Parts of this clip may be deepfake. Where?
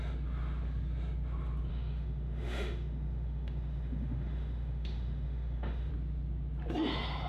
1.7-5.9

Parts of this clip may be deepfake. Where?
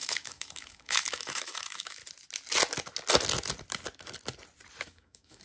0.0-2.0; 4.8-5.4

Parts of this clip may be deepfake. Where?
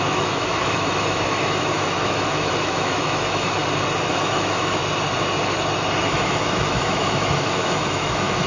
0.0-3.6; 4.1-4.8; 6.0-8.5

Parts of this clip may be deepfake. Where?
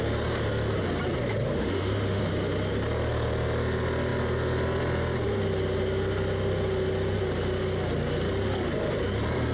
1.5-2.2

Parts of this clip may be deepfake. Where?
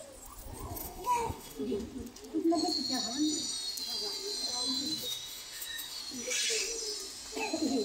0.8-1.8; 4.9-6.0